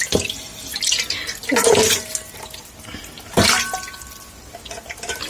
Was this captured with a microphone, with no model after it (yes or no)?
yes